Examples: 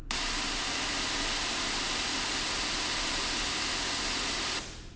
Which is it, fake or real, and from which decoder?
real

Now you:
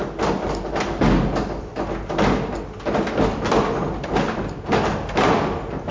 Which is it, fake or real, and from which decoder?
real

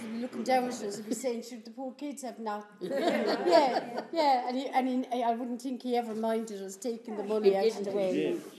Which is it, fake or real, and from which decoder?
real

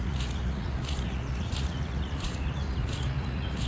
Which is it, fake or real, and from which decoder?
fake, vocoder, Vocos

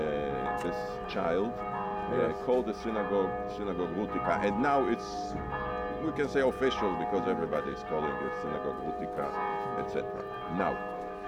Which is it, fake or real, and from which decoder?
real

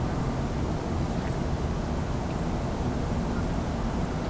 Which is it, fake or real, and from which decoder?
real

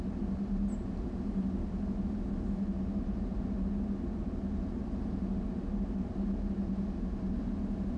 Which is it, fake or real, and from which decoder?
real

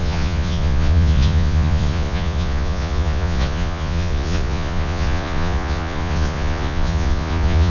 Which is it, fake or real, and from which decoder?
fake, vocoder, Vocos